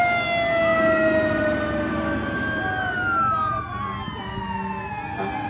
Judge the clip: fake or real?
real